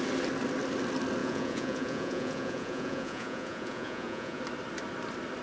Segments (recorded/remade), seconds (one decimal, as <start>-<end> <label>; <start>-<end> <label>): 0.0-1.2 recorded; 1.2-4.4 remade; 4.4-5.4 recorded